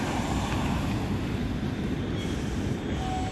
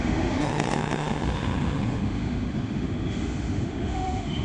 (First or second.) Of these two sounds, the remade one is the second